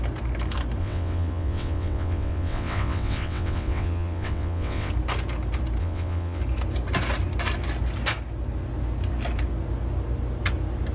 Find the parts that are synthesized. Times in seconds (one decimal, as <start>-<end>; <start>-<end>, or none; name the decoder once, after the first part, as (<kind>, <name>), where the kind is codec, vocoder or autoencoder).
0.8-4.9 (vocoder, WaveNeXt); 5.8-6.4